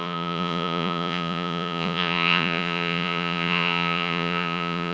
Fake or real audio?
fake